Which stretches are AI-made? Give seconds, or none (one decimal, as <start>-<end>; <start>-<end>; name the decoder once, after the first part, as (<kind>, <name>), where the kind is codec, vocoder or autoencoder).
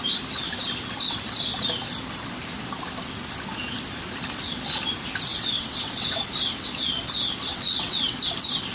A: 5.3-6.2 (vocoder, WaveNeXt); 7.5-8.2